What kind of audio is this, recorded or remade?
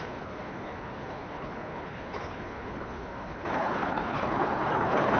remade